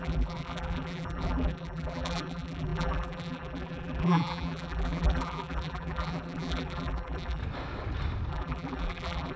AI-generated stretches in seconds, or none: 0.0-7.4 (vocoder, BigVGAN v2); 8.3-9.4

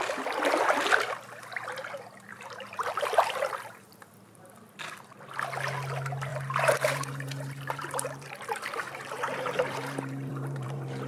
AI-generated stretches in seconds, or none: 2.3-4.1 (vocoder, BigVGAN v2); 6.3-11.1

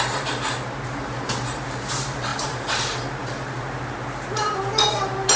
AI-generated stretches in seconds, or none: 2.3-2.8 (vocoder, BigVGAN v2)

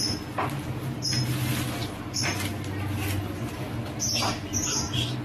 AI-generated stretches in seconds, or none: 1.8-3.7 (vocoder, BigVGAN v2)